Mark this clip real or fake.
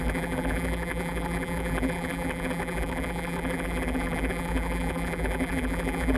fake